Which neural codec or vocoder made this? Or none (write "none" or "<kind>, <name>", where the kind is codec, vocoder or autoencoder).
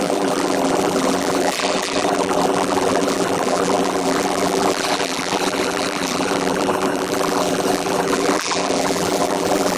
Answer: vocoder, BigVGAN v2